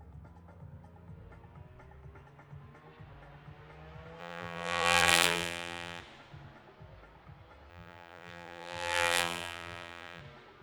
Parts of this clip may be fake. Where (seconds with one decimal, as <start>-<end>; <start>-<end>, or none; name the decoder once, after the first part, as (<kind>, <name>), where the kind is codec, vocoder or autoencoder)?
4.2-6.0 (vocoder, BigVGAN v2); 7.7-10.2